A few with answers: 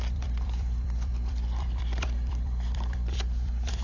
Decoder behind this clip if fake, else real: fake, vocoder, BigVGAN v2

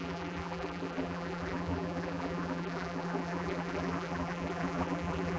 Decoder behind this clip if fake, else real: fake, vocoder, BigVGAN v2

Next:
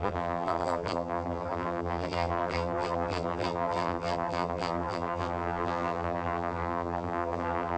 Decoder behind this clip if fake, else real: fake, vocoder, BigVGAN v2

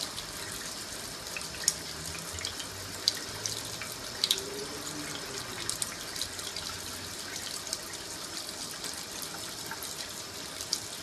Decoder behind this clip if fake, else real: real